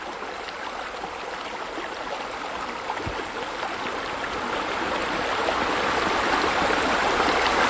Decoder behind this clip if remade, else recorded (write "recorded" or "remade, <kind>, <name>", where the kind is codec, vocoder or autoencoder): recorded